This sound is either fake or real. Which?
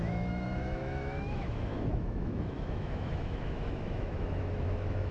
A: fake